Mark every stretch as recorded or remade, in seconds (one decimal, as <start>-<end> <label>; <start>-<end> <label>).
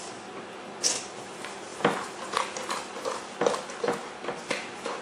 0.0-5.0 recorded